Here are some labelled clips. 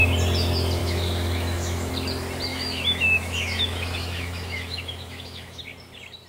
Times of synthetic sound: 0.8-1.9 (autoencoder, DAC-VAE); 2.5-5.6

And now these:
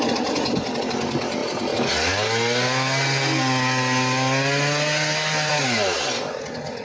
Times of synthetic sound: none

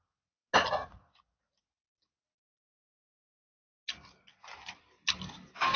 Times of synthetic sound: none

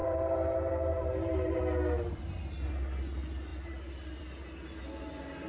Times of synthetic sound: 0.0-1.6 (vocoder, BigVGAN v2)

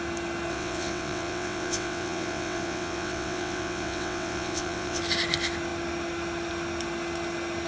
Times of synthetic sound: 0.5-5.0 (vocoder, WaveNeXt)